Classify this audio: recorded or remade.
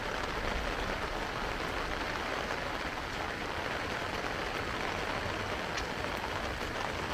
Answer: recorded